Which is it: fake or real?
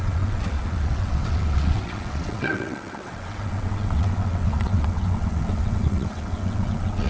fake